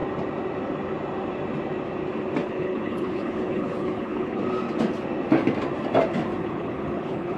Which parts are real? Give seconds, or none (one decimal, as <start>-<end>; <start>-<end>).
0.0-2.4; 4.4-6.4